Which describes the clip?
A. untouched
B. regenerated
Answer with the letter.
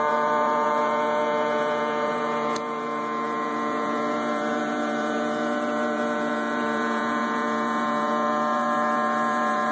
B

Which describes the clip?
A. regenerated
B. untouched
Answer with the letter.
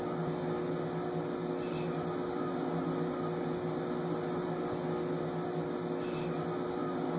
B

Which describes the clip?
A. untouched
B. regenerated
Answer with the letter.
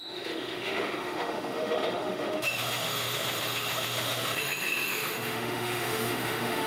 B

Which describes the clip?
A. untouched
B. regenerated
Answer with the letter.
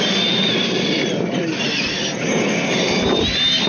A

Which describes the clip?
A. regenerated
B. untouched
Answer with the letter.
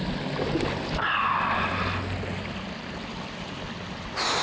B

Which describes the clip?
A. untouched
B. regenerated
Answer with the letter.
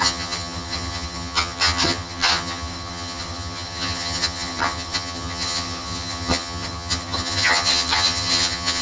B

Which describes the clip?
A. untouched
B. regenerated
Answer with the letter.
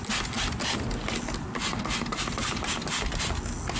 A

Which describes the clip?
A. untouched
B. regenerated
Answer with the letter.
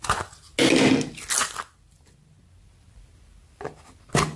A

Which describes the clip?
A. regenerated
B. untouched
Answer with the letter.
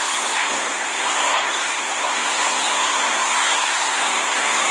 A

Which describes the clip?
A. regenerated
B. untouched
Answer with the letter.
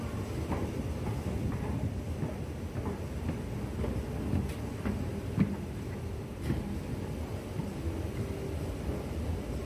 B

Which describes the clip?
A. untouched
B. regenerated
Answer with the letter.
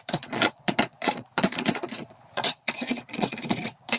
B